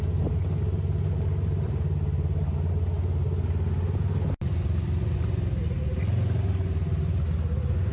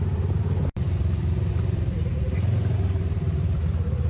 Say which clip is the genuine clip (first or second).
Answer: first